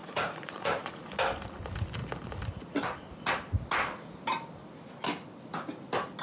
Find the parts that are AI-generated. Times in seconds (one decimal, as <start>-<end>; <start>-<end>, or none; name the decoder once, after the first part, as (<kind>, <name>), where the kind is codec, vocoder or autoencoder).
0.0-1.0 (vocoder, Vocos)